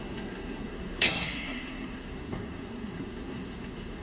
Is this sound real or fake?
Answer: fake